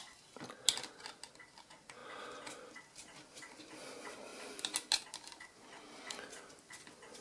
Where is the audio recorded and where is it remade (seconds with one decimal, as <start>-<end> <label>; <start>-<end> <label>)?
0.0-7.2 recorded